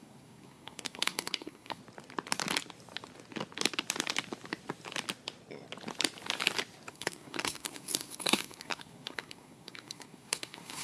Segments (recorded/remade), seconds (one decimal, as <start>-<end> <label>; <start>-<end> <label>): 0.0-1.8 remade; 1.8-6.9 recorded; 6.9-10.8 remade